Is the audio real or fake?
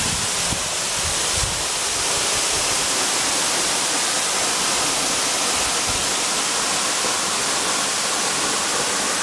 real